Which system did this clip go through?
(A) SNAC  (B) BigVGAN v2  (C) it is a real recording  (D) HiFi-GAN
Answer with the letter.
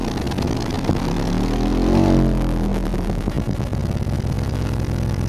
C